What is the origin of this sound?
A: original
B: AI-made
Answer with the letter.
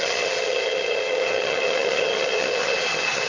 B